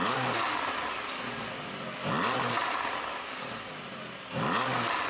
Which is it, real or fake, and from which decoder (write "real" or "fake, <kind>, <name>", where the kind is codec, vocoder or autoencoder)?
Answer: real